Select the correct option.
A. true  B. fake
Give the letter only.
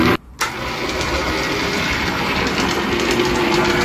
A